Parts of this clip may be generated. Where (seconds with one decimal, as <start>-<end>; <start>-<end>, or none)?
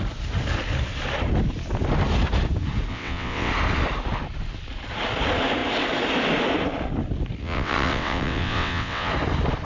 2.9-3.5; 7.4-9.1